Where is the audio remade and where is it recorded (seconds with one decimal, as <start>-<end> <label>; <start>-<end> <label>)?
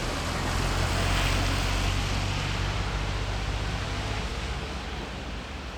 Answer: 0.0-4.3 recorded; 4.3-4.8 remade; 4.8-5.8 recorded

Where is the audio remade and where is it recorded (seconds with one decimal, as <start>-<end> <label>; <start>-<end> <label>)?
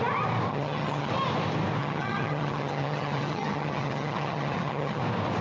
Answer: 0.0-0.5 recorded; 0.5-1.1 remade; 1.1-1.8 recorded; 1.8-5.0 remade; 5.0-5.4 recorded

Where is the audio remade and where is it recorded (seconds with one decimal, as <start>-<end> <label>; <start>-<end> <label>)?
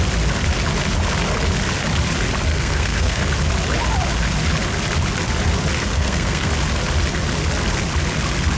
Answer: 0.0-2.5 recorded; 2.5-3.2 remade; 3.2-5.8 recorded; 5.8-6.5 remade; 6.5-8.6 recorded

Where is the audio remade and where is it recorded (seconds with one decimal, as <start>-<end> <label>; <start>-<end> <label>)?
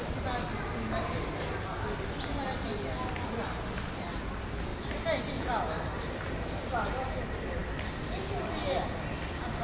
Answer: 0.0-9.6 recorded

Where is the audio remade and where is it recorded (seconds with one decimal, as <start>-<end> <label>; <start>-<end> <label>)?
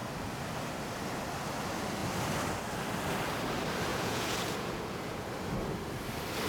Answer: 0.0-3.9 recorded; 3.9-5.2 remade; 5.2-6.5 recorded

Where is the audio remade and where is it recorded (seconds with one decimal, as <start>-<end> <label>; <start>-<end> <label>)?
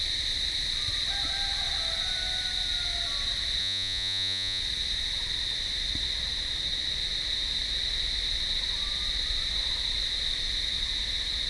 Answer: 0.0-3.6 recorded; 3.6-4.6 remade; 4.6-11.5 recorded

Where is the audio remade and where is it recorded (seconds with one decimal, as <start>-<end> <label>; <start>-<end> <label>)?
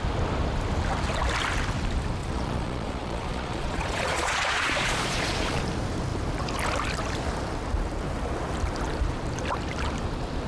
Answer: 0.0-2.2 recorded; 2.2-5.6 remade; 5.6-10.5 recorded